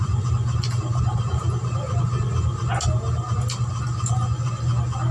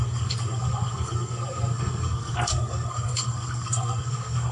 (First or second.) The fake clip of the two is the second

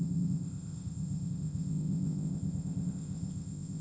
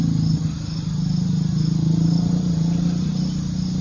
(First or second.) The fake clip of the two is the first